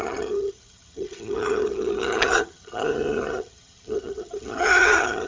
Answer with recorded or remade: remade